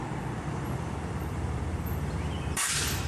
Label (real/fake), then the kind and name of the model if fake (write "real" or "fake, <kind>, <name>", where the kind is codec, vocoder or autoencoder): fake, vocoder, BigVGAN v2